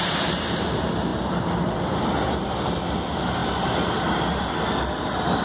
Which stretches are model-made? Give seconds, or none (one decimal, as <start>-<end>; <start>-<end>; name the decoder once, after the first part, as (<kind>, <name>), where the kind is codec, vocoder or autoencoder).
none

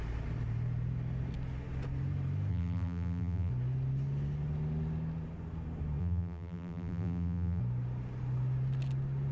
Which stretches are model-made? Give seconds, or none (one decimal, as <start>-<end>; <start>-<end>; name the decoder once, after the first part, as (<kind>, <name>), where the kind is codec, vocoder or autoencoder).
2.5-3.5 (vocoder, BigVGAN v2); 6.0-7.6

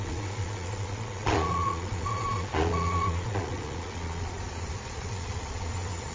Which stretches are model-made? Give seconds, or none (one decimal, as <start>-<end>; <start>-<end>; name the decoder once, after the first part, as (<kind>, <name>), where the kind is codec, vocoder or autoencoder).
0.0-6.1 (vocoder, Vocos)